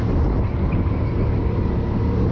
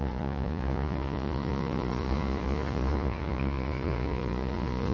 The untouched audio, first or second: first